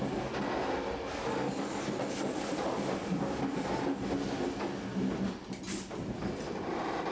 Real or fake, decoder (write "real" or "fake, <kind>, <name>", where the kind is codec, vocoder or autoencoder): real